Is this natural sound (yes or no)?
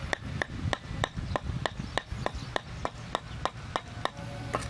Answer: yes